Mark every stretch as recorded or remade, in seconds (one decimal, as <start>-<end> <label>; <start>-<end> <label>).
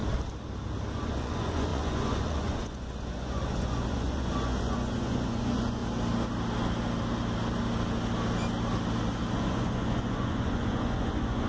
0.0-0.9 recorded; 0.9-5.8 remade; 5.8-9.3 recorded; 9.3-11.5 remade